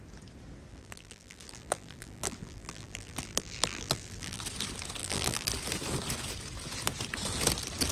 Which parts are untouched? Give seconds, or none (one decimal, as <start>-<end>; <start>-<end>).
0.0-0.7; 4.4-5.0; 5.5-7.9